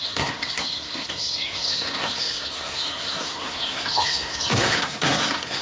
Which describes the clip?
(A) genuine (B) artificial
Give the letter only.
B